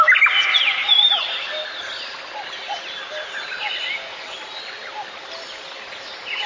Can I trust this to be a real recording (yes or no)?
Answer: yes